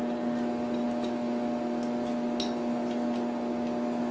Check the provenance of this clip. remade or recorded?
recorded